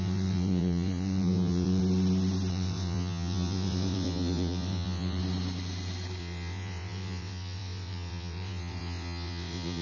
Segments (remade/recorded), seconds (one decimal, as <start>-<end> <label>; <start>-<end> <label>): 0.0-1.8 remade; 1.8-2.5 recorded; 2.5-5.2 remade; 5.2-6.2 recorded; 6.2-9.8 remade